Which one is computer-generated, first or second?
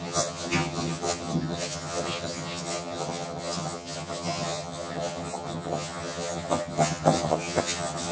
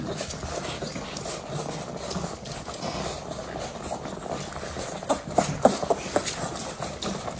first